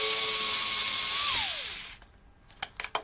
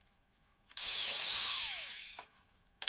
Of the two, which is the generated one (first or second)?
second